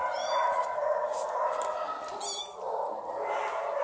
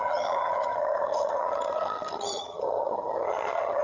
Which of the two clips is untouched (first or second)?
first